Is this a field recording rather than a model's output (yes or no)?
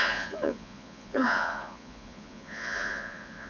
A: no